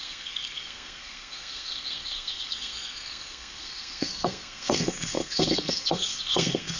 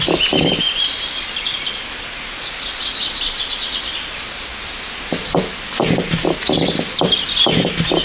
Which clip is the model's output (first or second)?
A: first